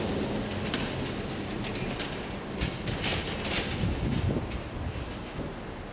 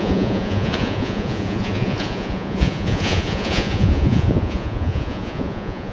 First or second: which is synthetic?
second